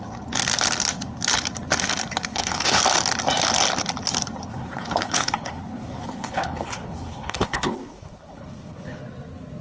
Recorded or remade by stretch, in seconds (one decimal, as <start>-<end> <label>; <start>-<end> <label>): 0.0-2.3 recorded; 2.3-2.8 remade; 2.8-4.5 recorded; 4.5-9.0 remade; 9.0-9.6 recorded